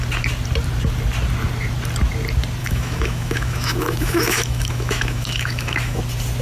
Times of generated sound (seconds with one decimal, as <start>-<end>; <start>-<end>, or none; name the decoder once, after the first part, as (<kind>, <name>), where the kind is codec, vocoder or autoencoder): 2.6-6.0 (autoencoder, DAC-VAE)